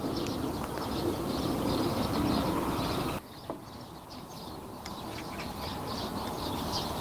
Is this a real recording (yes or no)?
yes